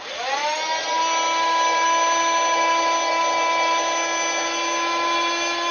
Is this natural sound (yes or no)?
yes